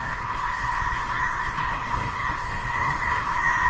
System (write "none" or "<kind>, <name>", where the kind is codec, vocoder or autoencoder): codec, SNAC